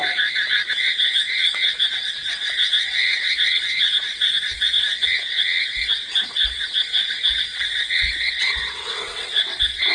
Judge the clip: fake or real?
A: fake